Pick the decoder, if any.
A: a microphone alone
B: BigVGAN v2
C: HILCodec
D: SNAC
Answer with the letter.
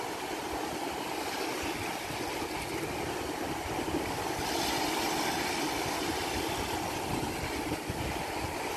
A